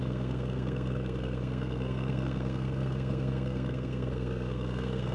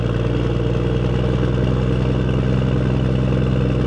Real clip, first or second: second